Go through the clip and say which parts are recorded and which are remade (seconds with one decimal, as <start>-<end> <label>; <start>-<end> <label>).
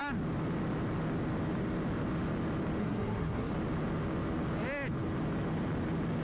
0.0-2.8 recorded; 2.8-3.5 remade; 3.5-6.2 recorded